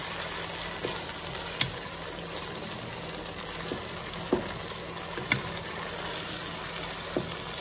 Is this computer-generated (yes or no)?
no